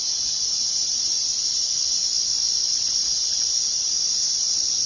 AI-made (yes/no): no